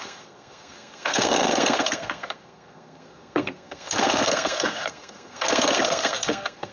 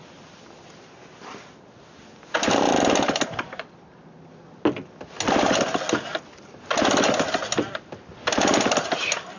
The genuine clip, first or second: second